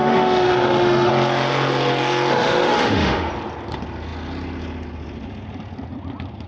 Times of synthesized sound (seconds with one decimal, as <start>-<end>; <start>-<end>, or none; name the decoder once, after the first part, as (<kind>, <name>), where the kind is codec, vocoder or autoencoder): 0.0-1.1 (autoencoder, DAC-VAE); 2.3-3.3